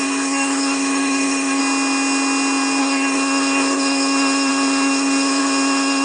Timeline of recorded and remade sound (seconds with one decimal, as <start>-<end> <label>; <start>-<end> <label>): 0.0-1.6 remade; 1.6-2.8 recorded; 2.8-6.0 remade